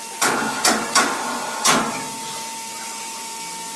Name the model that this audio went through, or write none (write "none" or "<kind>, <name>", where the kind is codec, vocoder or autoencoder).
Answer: none